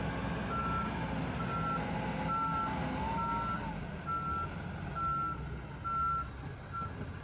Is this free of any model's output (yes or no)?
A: yes